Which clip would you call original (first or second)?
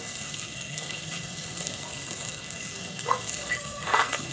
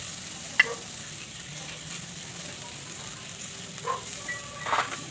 second